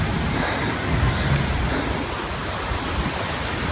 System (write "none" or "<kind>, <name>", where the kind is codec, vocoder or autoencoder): vocoder, BigVGAN v2